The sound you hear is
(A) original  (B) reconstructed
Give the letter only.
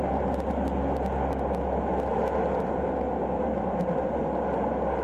A